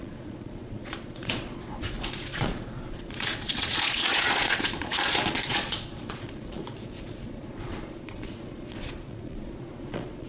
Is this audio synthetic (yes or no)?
yes